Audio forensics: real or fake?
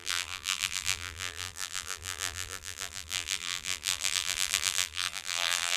fake